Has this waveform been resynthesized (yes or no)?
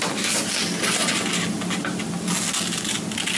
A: no